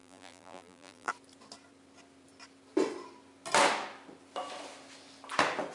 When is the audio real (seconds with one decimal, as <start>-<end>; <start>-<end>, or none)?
1.1-5.7